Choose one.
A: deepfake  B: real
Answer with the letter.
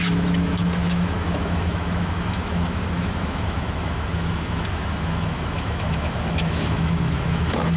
A